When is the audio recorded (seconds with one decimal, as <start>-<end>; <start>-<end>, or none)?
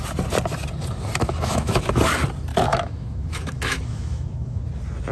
0.0-1.2; 1.9-2.5; 4.6-5.1